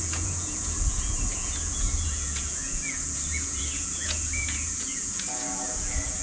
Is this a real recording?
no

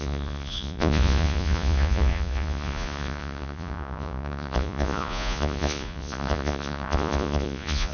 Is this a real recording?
no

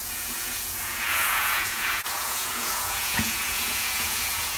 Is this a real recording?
no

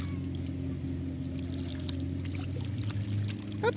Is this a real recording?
yes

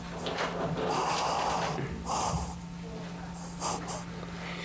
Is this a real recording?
yes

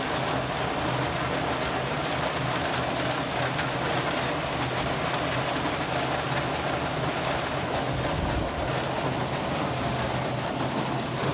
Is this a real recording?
yes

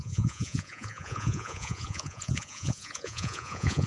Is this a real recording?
no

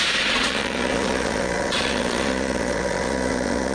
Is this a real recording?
no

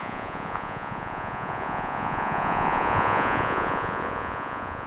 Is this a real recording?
no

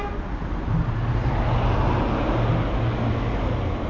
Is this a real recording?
yes